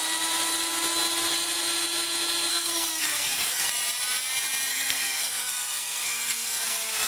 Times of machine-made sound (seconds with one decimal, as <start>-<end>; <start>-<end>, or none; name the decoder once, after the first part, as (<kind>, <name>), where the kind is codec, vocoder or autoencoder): 2.5-3.7 (codec, SNAC); 4.7-7.1